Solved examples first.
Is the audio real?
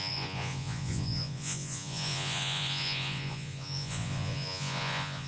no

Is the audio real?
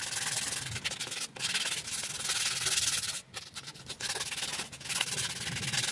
yes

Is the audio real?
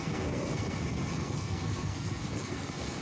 no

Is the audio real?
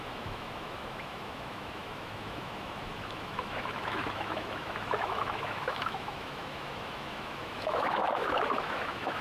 no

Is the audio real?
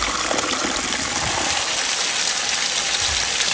yes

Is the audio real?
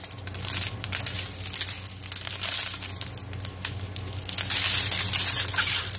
yes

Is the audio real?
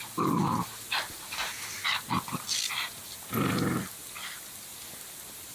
yes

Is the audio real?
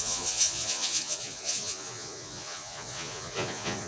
no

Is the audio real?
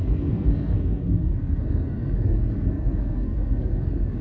no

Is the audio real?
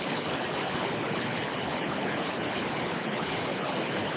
no